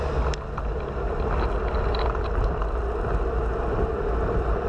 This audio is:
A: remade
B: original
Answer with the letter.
B